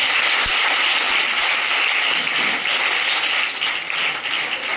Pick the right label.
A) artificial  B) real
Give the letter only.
B